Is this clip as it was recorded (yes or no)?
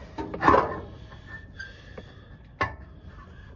yes